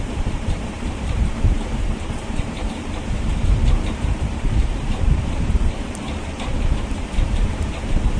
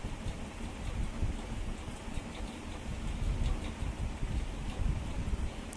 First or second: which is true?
second